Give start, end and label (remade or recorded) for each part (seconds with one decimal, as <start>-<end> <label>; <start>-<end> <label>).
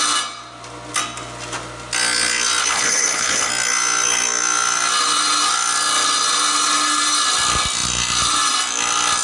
0.0-2.6 recorded; 2.6-3.5 remade; 3.5-9.2 recorded